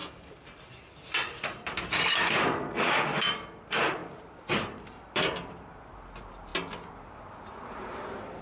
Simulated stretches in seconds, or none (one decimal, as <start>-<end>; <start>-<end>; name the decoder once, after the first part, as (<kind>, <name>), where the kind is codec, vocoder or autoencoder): 0.0-6.5 (vocoder, BigVGAN v2); 7.0-8.4